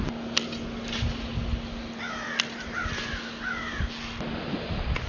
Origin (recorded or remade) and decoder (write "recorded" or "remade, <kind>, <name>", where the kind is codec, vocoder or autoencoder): recorded